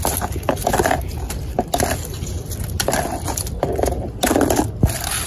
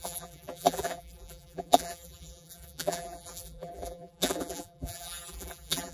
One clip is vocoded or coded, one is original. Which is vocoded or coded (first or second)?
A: second